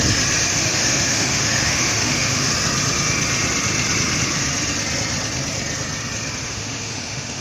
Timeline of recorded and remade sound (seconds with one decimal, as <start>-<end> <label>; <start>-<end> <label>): 0.0-0.5 recorded; 0.5-2.5 remade; 2.5-6.4 recorded; 6.4-7.4 remade